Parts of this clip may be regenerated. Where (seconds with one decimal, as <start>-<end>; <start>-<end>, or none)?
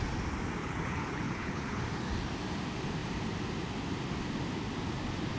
0.6-1.8